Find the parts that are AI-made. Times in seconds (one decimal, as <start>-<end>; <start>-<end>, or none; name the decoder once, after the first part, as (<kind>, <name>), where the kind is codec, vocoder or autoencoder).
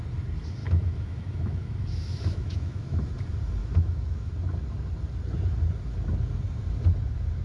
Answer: 0.6-3.0 (autoencoder, DAC-VAE); 3.6-4.3